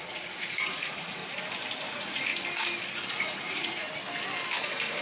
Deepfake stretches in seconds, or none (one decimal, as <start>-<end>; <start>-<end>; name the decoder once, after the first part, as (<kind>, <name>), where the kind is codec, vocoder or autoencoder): 0.0-1.2 (vocoder, Vocos); 1.8-2.3; 3.1-3.8